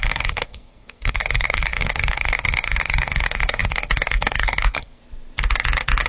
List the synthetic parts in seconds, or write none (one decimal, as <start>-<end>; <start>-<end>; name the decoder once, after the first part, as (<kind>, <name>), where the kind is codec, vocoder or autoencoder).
0.0-5.0 (codec, SNAC)